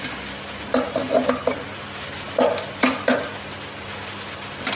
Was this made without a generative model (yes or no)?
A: yes